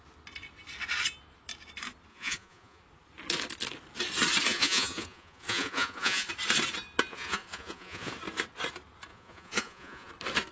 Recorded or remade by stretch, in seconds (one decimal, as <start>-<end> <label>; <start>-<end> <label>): 0.0-2.1 recorded; 2.1-2.8 remade; 2.8-4.5 recorded; 4.5-6.3 remade; 6.3-7.1 recorded; 7.1-8.1 remade; 8.1-9.1 recorded; 9.1-10.1 remade; 10.1-10.5 recorded